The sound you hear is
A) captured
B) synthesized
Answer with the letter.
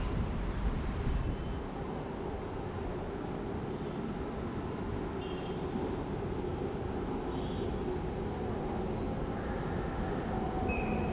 A